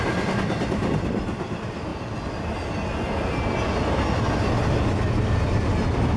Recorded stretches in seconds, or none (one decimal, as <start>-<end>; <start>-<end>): 0.0-6.2